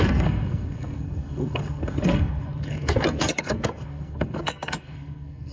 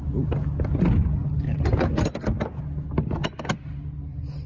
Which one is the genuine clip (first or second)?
second